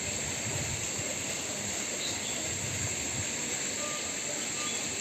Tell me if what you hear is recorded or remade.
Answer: recorded